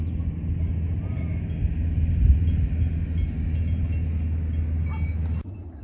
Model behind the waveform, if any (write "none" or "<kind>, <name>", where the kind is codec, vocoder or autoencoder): none